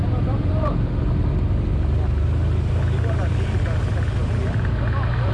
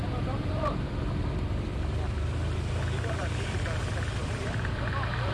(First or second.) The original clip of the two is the first